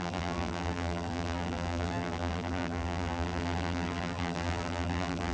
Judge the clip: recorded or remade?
remade